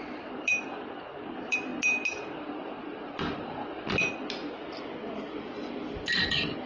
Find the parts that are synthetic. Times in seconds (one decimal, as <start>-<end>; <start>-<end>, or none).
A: 0.0-1.7; 5.7-6.7